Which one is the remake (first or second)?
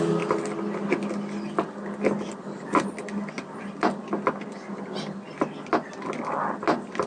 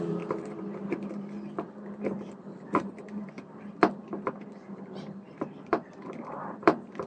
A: second